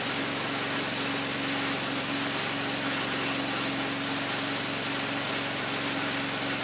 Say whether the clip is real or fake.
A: real